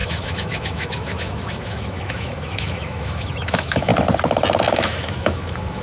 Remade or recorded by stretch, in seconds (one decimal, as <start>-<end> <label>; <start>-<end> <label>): 0.0-3.9 remade; 3.9-4.7 recorded; 4.7-5.8 remade